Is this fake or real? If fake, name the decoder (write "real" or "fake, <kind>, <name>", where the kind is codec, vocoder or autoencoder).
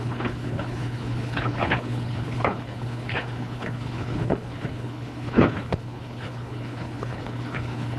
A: fake, codec, HILCodec